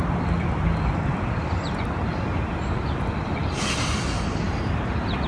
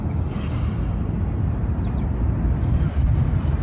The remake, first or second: first